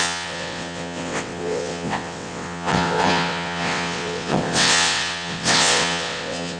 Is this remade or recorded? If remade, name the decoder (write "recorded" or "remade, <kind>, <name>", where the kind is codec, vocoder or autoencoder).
remade, vocoder, WaveNeXt